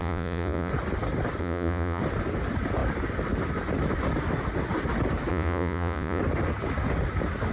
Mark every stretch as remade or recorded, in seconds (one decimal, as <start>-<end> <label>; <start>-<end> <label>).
0.0-0.7 remade; 0.7-1.4 recorded; 1.4-2.0 remade; 2.0-5.3 recorded; 5.3-6.2 remade; 6.2-7.5 recorded